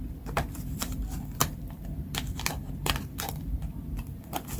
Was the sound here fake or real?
fake